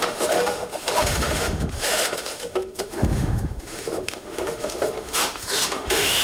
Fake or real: fake